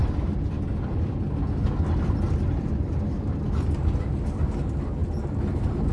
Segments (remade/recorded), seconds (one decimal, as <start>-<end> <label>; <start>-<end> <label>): 0.0-5.9 recorded